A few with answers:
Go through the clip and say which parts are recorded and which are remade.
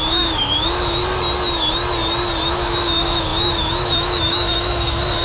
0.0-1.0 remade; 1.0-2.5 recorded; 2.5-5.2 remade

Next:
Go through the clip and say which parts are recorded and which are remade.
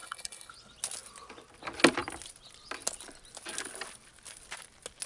0.0-0.5 remade; 0.5-5.1 recorded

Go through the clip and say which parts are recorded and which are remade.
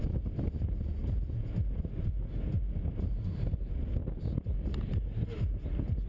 0.0-6.1 recorded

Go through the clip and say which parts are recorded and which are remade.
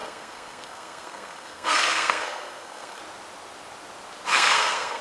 0.0-3.0 remade; 3.0-4.3 recorded; 4.3-5.0 remade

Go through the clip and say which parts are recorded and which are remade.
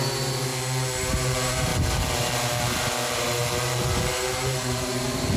0.0-0.5 remade; 0.5-1.1 recorded; 1.1-1.7 remade; 1.7-4.2 recorded; 4.2-5.4 remade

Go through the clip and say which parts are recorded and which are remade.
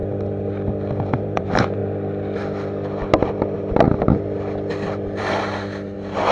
0.0-1.1 recorded; 1.1-1.8 remade; 1.8-5.2 recorded; 5.2-6.3 remade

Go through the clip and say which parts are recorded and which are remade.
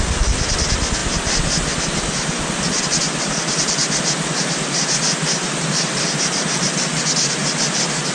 0.0-8.1 recorded